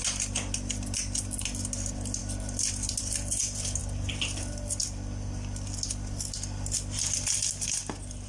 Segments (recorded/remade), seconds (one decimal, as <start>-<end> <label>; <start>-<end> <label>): 0.0-8.3 recorded